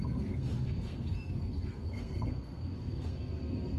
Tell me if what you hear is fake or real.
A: fake